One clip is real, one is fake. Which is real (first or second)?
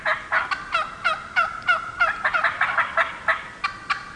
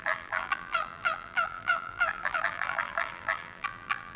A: first